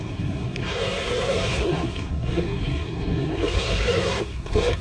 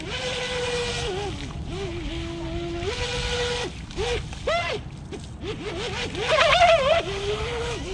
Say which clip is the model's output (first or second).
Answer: first